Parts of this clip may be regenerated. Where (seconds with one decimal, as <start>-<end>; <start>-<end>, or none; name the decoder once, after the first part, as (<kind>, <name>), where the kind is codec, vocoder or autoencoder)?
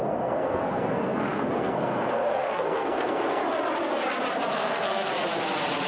0.0-3.4 (codec, SNAC); 4.5-5.1